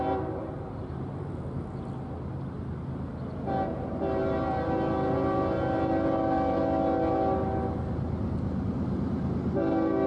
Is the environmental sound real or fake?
real